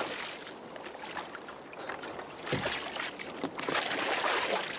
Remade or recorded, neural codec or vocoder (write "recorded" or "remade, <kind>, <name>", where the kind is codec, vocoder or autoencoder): recorded